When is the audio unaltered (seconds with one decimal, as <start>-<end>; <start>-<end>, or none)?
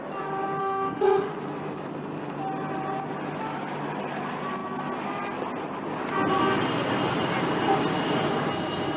0.0-0.6; 1.3-9.0